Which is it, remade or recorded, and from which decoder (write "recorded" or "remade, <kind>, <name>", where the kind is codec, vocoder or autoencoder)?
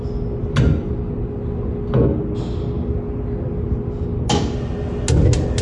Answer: recorded